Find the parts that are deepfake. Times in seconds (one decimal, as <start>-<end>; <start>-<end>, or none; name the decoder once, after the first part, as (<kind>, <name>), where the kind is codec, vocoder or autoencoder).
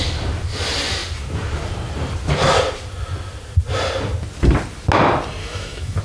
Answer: 5.4-6.0 (autoencoder, DAC-VAE)